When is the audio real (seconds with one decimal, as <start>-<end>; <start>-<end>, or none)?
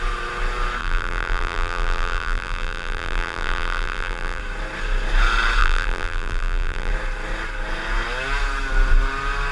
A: 0.0-0.8; 4.4-5.6; 6.9-9.5